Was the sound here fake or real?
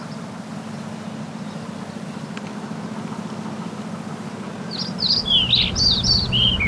real